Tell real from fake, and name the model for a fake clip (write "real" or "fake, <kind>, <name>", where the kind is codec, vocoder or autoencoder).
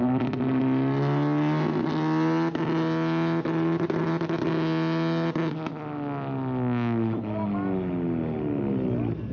real